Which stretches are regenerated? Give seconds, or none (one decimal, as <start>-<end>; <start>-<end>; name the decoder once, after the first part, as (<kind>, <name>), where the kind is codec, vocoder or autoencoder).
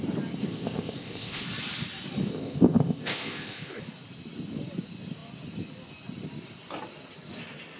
0.4-1.4 (codec, ZipCodec); 2.3-3.8